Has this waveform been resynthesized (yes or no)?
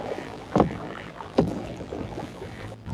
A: yes